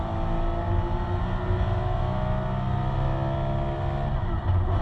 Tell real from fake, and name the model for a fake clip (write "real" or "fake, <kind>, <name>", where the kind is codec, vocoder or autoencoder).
real